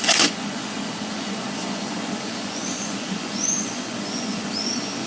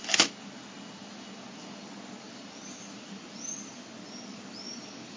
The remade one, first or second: first